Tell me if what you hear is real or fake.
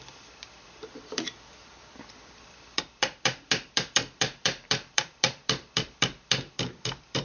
fake